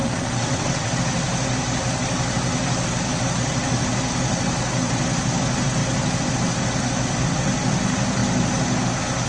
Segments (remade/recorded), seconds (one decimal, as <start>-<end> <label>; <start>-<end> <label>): 0.0-1.0 remade; 1.0-9.3 recorded